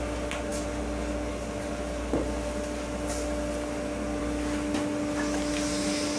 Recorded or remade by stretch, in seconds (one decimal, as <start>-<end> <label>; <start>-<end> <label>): 0.0-6.2 recorded